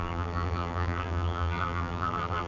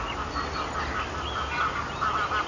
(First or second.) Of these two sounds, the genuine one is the second